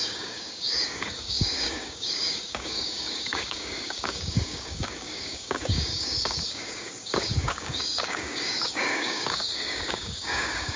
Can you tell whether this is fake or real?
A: fake